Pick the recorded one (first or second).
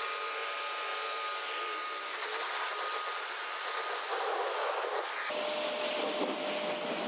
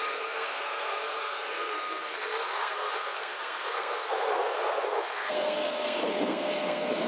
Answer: first